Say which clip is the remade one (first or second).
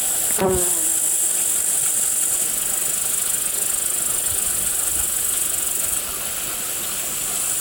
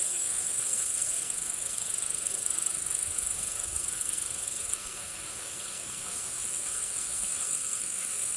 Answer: second